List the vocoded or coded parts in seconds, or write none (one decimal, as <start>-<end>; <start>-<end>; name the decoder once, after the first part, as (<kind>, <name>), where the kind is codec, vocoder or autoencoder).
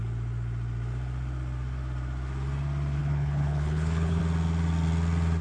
3.0-4.2 (codec, HILCodec)